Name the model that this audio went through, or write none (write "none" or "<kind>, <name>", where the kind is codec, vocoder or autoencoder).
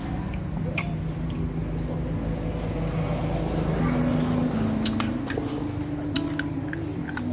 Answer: none